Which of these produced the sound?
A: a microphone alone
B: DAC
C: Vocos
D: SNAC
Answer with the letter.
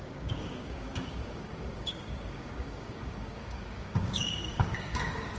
B